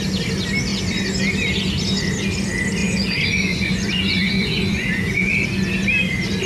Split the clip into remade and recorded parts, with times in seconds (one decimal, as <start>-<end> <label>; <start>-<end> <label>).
0.0-2.8 recorded; 2.8-5.3 remade; 5.3-6.5 recorded